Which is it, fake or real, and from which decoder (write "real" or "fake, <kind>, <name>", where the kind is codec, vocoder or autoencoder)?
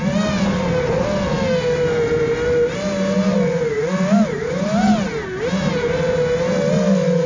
real